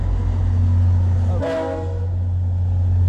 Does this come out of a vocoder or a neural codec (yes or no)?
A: no